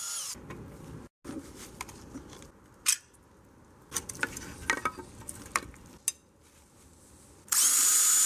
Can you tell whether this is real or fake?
real